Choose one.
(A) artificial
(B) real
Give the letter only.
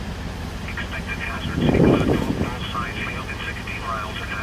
B